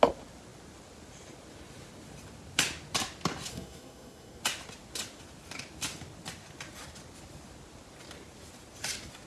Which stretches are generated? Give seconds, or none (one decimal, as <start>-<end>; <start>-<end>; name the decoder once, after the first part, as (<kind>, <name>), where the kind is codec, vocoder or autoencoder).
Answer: 3.5-4.4 (codec, SNAC)